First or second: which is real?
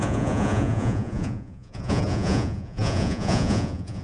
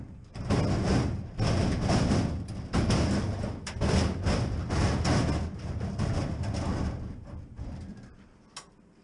second